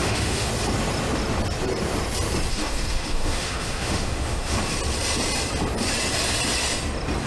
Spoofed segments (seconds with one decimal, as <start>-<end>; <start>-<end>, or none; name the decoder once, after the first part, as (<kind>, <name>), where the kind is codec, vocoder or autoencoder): 0.0-0.5 (autoencoder, DAC-VAE); 2.6-4.6